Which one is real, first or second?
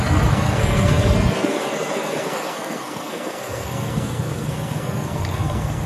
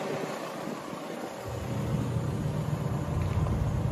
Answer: second